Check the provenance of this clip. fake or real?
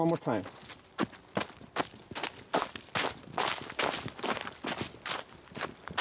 real